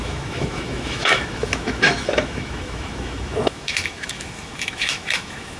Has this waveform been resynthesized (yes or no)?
yes